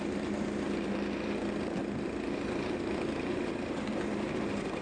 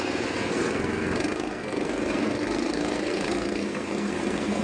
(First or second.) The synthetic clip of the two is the second